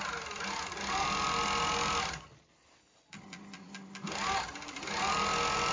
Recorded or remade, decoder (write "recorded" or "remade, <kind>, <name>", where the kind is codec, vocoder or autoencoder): recorded